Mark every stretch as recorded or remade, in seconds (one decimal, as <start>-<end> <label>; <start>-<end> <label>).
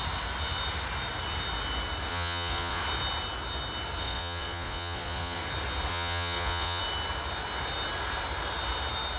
0.0-2.1 recorded; 2.1-2.8 remade; 2.8-4.0 recorded; 4.0-5.4 remade; 5.4-5.9 recorded; 5.9-6.8 remade; 6.8-9.2 recorded